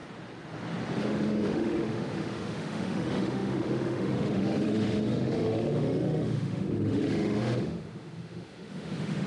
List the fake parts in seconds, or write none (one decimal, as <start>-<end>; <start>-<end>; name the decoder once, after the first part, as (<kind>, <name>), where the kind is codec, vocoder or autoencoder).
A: 1.0-9.3 (autoencoder, DAC-VAE)